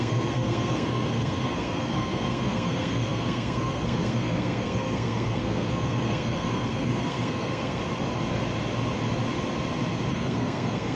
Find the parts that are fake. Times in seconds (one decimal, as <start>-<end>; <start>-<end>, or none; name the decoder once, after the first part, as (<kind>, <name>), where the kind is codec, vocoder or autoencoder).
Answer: 0.0-7.8 (codec, SNAC); 10.1-11.0